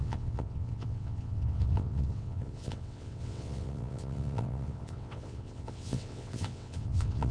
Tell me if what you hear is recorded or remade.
remade